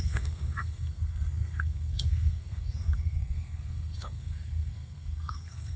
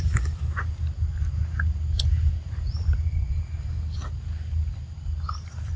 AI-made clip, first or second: first